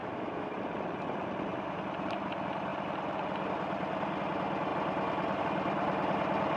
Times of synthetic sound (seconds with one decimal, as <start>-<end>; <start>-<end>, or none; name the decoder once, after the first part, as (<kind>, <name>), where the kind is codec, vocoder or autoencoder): 0.0-0.5 (autoencoder, DAC-VAE)